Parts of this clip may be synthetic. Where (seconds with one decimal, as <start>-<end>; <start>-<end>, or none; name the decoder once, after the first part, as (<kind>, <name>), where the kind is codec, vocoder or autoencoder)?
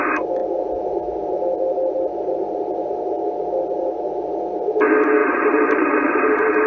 5.2-6.7 (vocoder, BigVGAN v2)